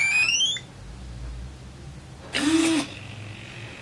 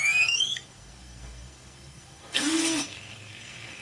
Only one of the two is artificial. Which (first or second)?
second